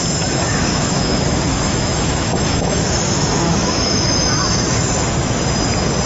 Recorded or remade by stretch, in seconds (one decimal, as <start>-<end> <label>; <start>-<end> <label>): 0.0-0.7 recorded; 0.7-4.4 remade; 4.4-6.1 recorded

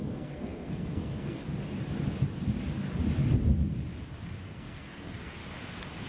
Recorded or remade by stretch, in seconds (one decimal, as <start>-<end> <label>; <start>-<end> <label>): 0.0-1.4 remade; 1.4-4.4 recorded; 4.4-5.4 remade; 5.4-6.1 recorded

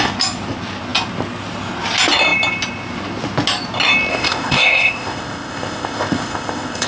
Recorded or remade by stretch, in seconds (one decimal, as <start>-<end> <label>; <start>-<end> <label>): 0.0-4.1 recorded; 4.1-6.9 remade

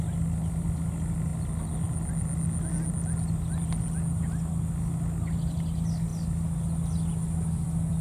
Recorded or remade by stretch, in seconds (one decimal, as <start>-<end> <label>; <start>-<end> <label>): 0.0-8.0 recorded